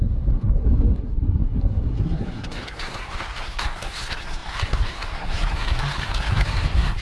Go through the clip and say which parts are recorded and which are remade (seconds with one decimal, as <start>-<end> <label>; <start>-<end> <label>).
0.0-7.0 remade

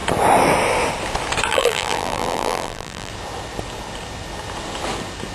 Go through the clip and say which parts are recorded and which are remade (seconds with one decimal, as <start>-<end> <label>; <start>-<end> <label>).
0.0-1.5 recorded; 1.5-3.1 remade; 3.1-5.3 recorded

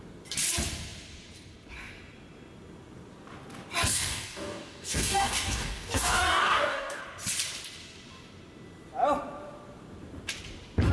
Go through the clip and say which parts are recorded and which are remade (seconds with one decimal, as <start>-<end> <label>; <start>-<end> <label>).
0.0-3.9 recorded; 3.9-7.0 remade; 7.0-10.9 recorded

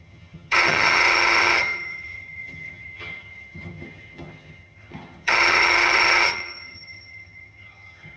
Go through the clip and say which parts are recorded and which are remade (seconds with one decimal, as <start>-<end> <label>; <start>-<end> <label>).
0.0-8.2 remade

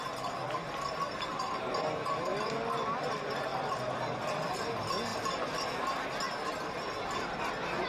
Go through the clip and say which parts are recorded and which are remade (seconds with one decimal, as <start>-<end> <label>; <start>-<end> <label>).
0.0-3.5 recorded; 3.5-4.2 remade; 4.2-7.9 recorded